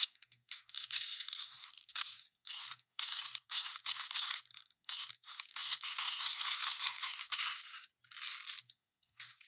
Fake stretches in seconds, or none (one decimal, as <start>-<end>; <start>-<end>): 0.0-7.9; 8.6-9.5